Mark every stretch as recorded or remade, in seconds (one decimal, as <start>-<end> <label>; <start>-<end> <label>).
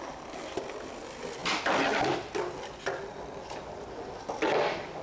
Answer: 0.0-5.0 recorded